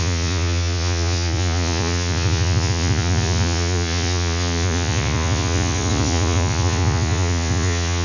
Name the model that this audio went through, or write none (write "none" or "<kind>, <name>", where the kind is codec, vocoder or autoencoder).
vocoder, Vocos